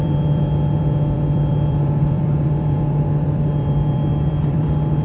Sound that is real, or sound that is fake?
fake